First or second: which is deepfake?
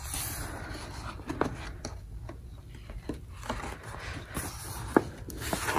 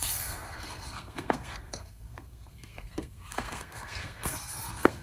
second